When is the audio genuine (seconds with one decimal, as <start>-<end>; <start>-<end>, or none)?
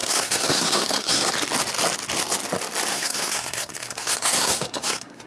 1.3-2.9